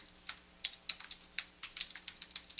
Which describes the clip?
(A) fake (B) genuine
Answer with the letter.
B